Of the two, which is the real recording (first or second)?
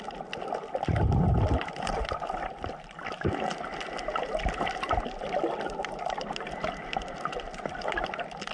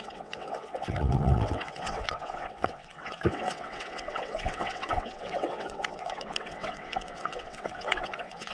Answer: first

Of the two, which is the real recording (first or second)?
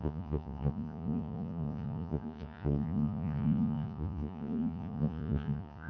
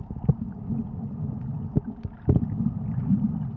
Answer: second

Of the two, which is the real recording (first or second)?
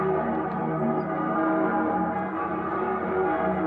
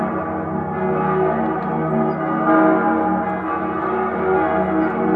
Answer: second